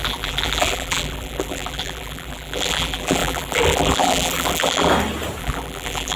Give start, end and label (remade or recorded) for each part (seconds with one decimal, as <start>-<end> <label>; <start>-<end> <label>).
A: 0.0-4.9 remade; 4.9-5.4 recorded; 5.4-6.2 remade